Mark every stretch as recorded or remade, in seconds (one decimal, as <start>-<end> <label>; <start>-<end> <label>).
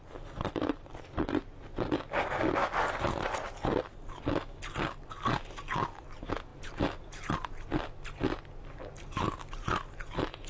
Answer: 0.0-10.5 recorded